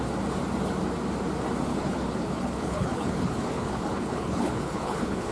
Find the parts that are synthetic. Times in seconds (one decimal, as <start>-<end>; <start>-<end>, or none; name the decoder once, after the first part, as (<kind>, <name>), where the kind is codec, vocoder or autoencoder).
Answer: 1.7-5.3 (codec, HILCodec)